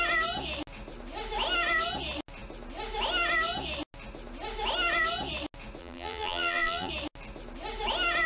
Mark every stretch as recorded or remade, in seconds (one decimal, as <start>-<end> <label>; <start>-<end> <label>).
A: 0.0-5.8 recorded; 5.8-6.9 remade; 6.9-8.3 recorded

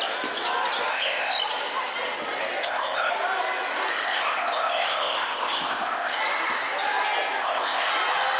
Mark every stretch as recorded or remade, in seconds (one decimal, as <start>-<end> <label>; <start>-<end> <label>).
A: 0.0-0.9 recorded; 0.9-1.4 remade; 1.4-2.6 recorded; 2.6-3.1 remade; 3.1-3.9 recorded; 3.9-6.2 remade; 6.2-7.4 recorded; 7.4-7.9 remade; 7.9-8.4 recorded

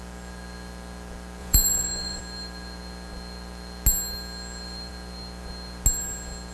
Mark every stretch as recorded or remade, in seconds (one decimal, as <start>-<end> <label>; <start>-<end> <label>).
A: 0.0-1.4 recorded; 1.4-2.2 remade; 2.2-6.5 recorded